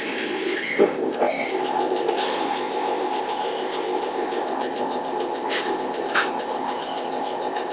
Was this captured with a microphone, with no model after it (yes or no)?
no